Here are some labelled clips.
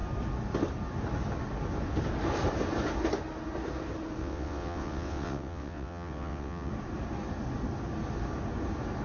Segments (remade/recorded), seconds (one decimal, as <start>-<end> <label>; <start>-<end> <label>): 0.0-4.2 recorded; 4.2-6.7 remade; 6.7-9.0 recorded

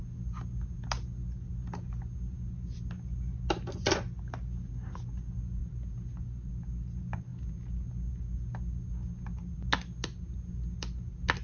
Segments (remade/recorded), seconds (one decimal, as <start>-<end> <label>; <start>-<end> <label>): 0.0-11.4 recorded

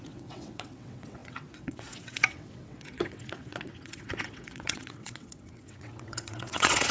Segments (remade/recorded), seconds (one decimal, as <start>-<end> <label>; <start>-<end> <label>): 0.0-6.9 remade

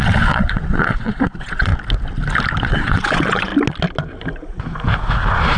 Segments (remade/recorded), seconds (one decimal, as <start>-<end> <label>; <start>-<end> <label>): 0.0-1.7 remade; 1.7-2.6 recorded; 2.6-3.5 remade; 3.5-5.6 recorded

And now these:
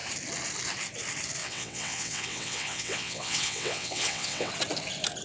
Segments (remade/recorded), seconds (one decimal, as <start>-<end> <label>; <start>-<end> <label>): 0.0-1.4 recorded; 1.4-4.5 remade; 4.5-5.2 recorded

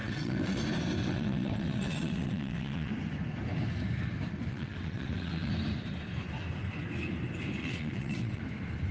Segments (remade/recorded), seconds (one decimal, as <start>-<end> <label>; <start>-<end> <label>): 0.0-0.6 remade; 0.6-1.0 recorded; 1.0-2.9 remade; 2.9-4.5 recorded; 4.5-5.5 remade; 5.5-7.6 recorded; 7.6-8.4 remade; 8.4-8.9 recorded